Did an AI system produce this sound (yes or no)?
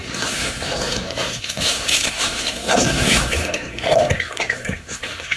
yes